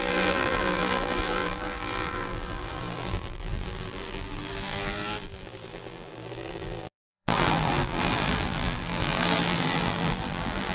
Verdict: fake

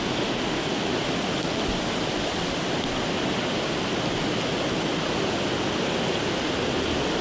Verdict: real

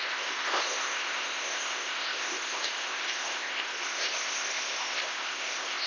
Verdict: fake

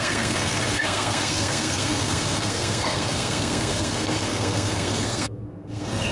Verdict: fake